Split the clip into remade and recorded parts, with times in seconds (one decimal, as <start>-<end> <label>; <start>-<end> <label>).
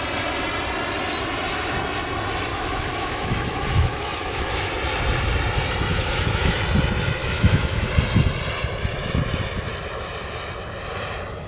0.0-2.5 recorded; 2.5-4.7 remade; 4.7-5.9 recorded; 5.9-6.6 remade; 6.6-7.2 recorded; 7.2-7.9 remade; 7.9-11.5 recorded